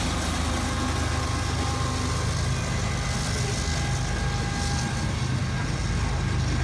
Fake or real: real